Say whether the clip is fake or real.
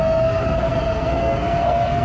fake